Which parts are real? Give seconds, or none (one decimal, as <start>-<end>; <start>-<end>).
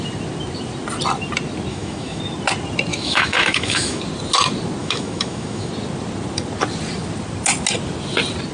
0.0-1.7; 2.2-2.9; 4.0-4.8; 5.7-8.5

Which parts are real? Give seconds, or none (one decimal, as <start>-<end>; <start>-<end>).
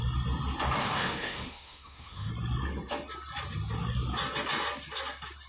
0.0-0.8; 2.3-5.5